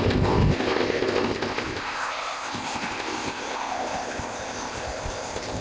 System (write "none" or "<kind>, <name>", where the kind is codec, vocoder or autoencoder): codec, ZipCodec